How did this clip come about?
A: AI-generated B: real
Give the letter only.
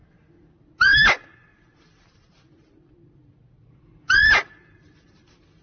B